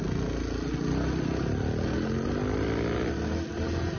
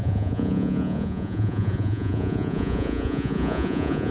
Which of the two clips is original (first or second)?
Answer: first